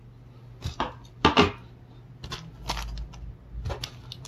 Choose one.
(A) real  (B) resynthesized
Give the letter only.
A